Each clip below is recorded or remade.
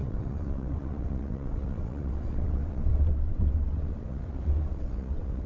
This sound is remade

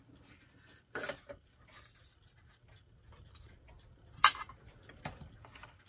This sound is recorded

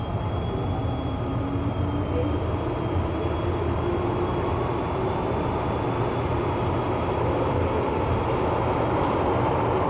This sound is recorded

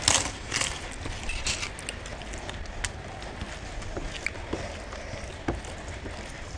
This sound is recorded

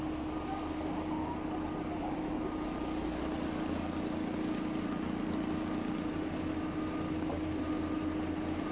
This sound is recorded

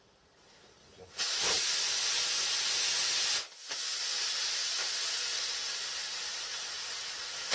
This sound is recorded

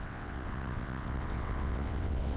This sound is remade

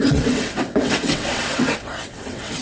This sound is remade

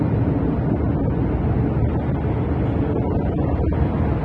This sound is recorded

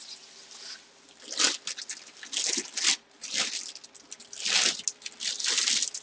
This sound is recorded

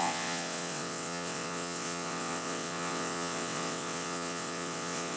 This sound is remade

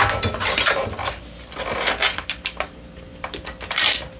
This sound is recorded